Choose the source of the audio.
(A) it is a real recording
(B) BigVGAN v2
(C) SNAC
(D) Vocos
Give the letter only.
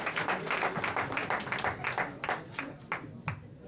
A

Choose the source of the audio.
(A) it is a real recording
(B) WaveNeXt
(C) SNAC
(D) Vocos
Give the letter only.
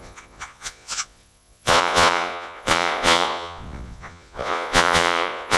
D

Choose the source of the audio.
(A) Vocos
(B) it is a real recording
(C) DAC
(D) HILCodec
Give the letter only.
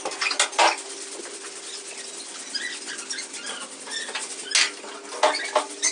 B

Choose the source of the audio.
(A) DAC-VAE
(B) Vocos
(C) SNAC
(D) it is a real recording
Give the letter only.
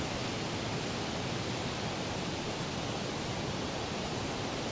D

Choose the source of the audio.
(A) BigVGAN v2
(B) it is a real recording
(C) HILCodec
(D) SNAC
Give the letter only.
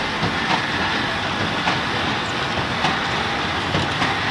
B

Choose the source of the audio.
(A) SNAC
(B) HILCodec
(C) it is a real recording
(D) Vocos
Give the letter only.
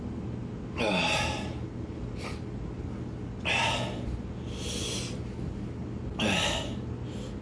C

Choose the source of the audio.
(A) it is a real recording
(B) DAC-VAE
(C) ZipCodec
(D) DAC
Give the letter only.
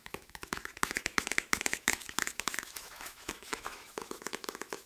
B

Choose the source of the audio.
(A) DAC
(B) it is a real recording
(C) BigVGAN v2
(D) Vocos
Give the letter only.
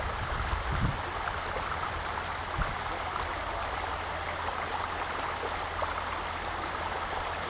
B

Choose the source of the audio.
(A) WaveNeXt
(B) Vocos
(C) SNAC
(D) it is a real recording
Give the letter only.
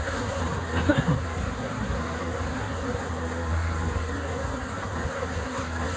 C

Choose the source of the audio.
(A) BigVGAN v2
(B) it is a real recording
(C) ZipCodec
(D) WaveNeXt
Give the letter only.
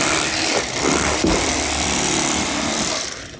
A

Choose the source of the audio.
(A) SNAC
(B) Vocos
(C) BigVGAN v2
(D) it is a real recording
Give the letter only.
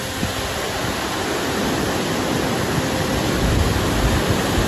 D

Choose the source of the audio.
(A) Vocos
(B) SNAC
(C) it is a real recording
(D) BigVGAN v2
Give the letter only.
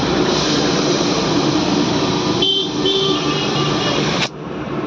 D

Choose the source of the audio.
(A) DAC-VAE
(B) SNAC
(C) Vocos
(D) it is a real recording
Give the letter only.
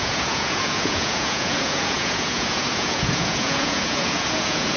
C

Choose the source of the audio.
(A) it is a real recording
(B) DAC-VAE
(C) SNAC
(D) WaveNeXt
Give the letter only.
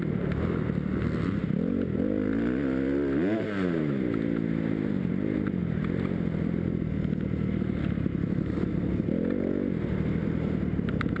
A